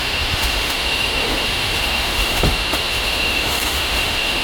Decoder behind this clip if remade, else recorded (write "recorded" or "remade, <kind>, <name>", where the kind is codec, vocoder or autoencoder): remade, autoencoder, DAC-VAE